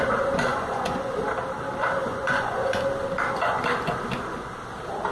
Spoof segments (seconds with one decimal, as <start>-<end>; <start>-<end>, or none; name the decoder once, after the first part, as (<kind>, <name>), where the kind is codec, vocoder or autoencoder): 0.5-1.2 (vocoder, Vocos); 2.0-2.8